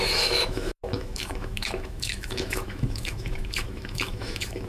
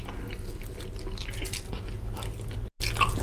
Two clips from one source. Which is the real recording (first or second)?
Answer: second